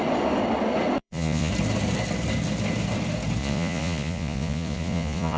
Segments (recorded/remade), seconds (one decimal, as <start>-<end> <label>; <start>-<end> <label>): 0.0-1.0 recorded; 1.0-1.5 remade; 1.5-3.4 recorded; 3.4-5.4 remade